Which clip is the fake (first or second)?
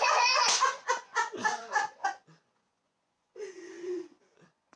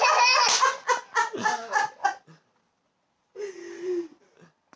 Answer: first